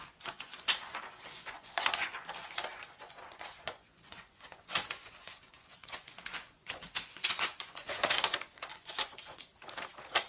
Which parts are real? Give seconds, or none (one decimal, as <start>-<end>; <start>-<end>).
9.5-10.3